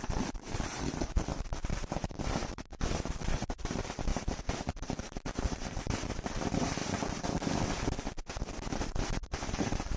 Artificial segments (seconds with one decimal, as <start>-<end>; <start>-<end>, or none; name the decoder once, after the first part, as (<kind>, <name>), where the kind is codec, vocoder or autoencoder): 0.0-6.8 (vocoder, BigVGAN v2); 8.7-10.0